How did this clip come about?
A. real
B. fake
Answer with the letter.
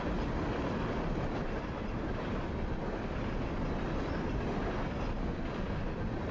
A